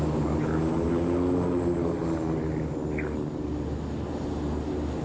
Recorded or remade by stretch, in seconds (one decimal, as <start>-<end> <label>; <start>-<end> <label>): 0.0-5.0 recorded